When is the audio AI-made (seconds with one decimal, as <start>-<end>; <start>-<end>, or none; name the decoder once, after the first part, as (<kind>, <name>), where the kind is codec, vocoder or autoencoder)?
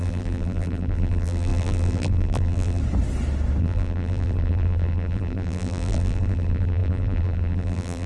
0.0-2.8 (vocoder, BigVGAN v2); 3.6-8.1